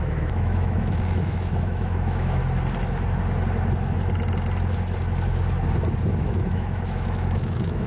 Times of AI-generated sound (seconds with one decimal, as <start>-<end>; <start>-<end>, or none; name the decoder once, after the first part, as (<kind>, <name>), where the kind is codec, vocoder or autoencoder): 0.0-2.4 (autoencoder, DAC-VAE); 6.2-7.9